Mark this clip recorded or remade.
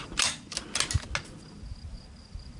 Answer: recorded